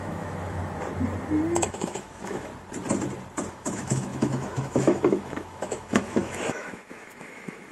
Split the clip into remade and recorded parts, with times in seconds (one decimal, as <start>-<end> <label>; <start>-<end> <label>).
0.0-0.6 remade; 0.6-1.5 recorded; 1.5-2.5 remade; 2.5-3.5 recorded; 3.5-7.7 remade